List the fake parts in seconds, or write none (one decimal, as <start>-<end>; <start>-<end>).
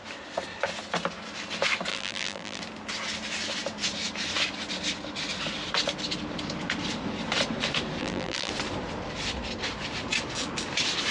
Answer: 1.9-2.6; 8.0-8.5